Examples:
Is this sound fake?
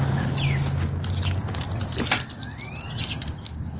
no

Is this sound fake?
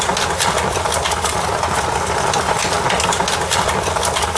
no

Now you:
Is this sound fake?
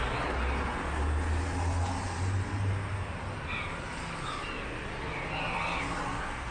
no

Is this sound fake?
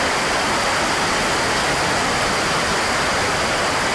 no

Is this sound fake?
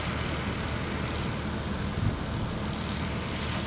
no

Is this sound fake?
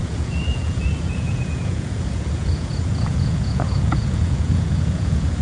yes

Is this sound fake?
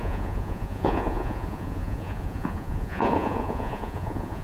yes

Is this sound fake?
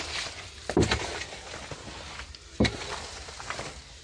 no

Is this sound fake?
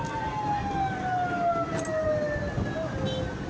no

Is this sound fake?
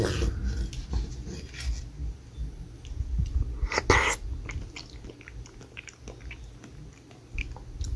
no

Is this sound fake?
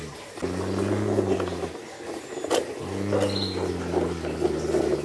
no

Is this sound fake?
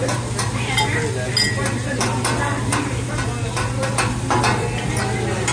no